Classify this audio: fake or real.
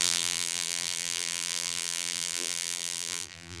fake